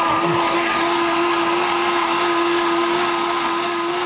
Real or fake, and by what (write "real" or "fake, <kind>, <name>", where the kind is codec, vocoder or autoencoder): real